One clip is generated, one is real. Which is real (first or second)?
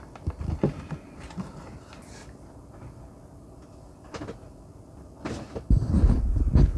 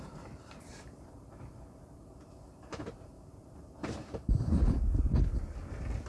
first